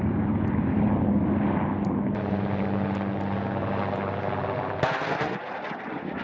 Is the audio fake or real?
real